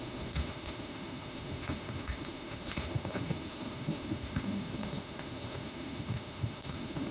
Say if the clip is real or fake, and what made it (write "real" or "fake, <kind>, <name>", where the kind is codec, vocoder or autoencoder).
fake, autoencoder, DAC-VAE